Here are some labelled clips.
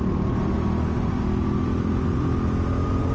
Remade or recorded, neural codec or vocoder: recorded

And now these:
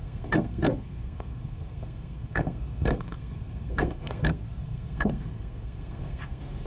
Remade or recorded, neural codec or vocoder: remade, codec, SNAC